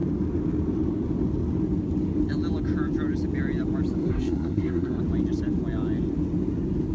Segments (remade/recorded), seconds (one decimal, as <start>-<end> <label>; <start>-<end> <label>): 0.0-4.0 recorded; 4.0-5.0 remade; 5.0-6.9 recorded